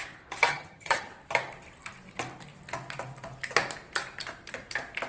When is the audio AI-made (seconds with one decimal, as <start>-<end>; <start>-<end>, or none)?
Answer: 0.5-1.1